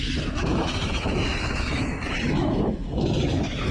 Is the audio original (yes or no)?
no